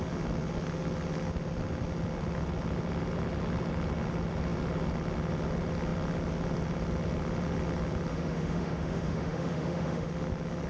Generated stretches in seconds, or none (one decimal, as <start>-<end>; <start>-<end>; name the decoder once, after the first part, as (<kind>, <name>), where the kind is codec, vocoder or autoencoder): 8.1-10.1 (autoencoder, DAC-VAE)